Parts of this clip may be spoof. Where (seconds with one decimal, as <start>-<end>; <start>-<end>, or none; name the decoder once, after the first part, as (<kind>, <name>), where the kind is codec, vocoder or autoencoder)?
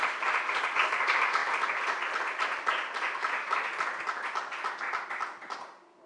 none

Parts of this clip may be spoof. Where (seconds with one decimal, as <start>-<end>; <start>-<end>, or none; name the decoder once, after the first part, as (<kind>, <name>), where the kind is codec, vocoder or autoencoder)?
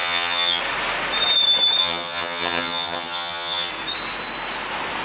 0.0-0.6 (vocoder, HiFi-GAN); 1.8-3.7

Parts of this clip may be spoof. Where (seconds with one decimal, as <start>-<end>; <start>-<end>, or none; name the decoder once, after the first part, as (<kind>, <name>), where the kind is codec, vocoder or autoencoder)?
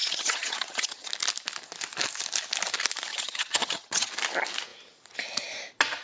0.0-1.1 (vocoder, HiFi-GAN); 3.1-4.1